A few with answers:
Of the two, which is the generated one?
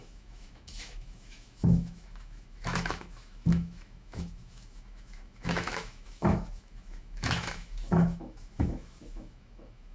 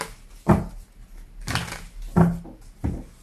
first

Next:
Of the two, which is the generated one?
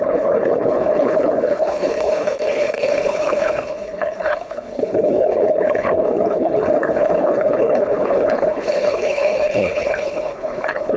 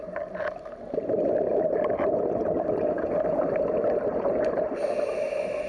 first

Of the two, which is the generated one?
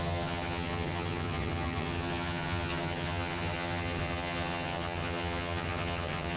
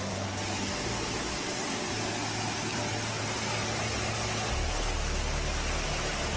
first